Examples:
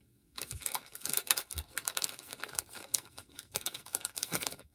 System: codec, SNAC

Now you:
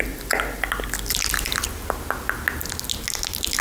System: none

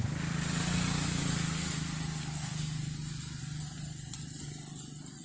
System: none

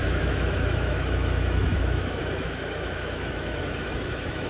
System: autoencoder, DAC-VAE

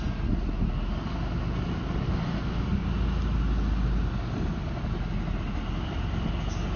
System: none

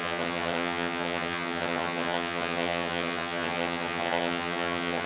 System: vocoder, HiFi-GAN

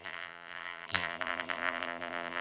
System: vocoder, BigVGAN v2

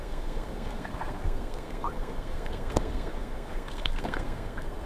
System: codec, SNAC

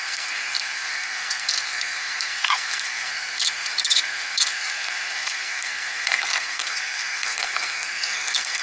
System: codec, SNAC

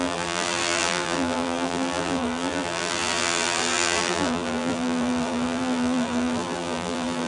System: vocoder, BigVGAN v2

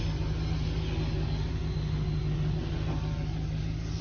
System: none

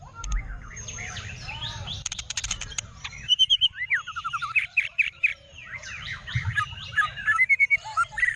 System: vocoder, BigVGAN v2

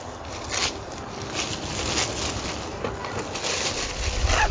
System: none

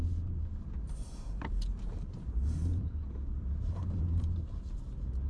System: vocoder, BigVGAN v2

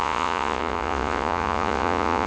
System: vocoder, Vocos